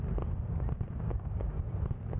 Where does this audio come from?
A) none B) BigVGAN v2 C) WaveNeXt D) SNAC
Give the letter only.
A